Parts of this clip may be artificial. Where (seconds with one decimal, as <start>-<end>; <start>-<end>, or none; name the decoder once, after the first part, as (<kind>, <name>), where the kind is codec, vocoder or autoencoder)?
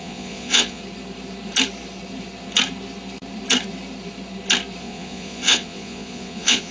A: 0.0-0.8 (vocoder, Vocos); 4.8-6.7